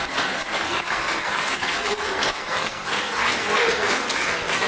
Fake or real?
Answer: fake